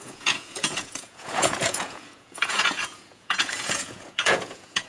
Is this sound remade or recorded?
remade